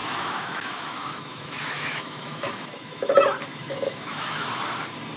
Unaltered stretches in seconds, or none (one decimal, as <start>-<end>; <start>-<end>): 3.1-3.5; 4.5-5.2